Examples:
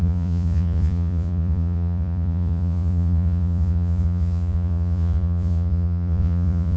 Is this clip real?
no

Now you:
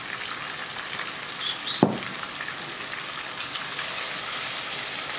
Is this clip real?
yes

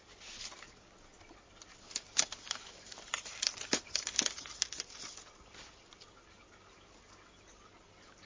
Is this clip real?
yes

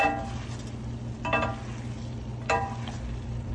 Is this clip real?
yes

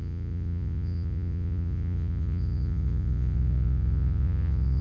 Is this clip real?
no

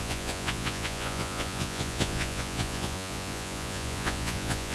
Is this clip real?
no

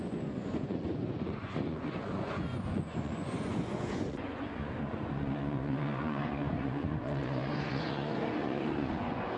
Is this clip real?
no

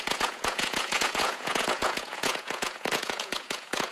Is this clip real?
no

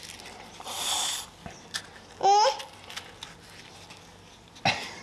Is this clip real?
yes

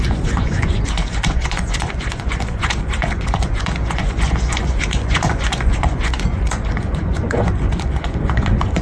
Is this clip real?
no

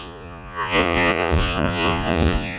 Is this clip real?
no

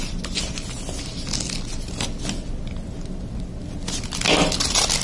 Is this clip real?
yes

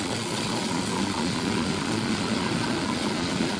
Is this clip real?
no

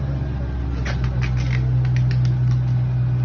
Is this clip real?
yes